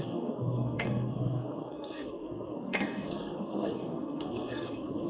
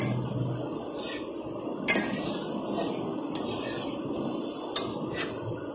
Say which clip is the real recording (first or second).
second